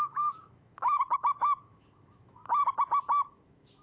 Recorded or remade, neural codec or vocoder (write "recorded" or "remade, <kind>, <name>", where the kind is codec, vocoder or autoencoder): remade, autoencoder, DAC-VAE